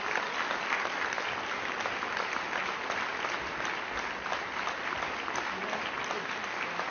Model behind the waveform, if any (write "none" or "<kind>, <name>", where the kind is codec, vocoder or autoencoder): none